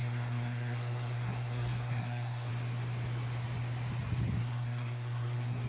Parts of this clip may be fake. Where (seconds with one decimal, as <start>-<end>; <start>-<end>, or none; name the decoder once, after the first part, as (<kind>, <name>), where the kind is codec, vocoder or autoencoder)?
0.0-2.5 (codec, SNAC); 4.4-5.7